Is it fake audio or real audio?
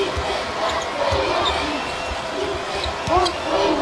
real